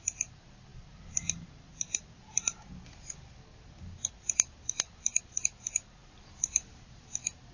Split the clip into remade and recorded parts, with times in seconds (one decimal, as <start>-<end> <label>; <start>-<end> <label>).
0.0-6.0 recorded; 6.0-6.8 remade; 6.8-7.5 recorded